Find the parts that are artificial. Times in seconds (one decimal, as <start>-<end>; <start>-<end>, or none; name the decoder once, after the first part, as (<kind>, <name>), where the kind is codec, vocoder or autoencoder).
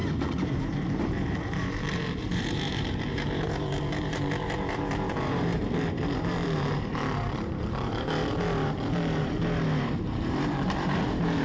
0.0-11.4 (vocoder, BigVGAN v2)